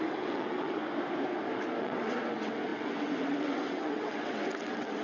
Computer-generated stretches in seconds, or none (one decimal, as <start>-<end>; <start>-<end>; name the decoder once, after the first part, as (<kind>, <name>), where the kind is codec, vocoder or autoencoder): 0.0-0.8 (vocoder, WaveNeXt); 1.8-5.0

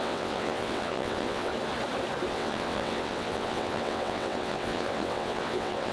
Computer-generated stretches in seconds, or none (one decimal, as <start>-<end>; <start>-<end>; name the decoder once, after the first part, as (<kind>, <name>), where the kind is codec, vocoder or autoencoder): 0.0-1.5 (vocoder, WaveNeXt); 2.3-5.9